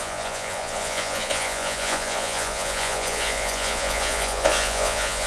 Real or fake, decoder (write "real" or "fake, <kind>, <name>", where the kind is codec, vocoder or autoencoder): fake, vocoder, Vocos